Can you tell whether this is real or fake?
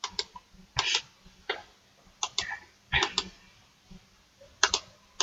real